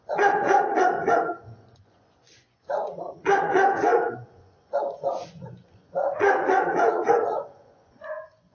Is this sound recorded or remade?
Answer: remade